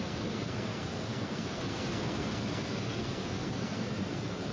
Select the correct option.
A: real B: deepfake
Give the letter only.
B